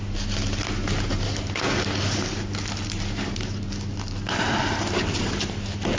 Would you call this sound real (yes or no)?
yes